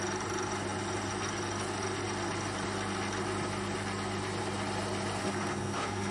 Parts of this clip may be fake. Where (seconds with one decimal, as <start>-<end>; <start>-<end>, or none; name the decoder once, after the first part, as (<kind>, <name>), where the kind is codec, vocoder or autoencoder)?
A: 5.2-6.1 (codec, SNAC)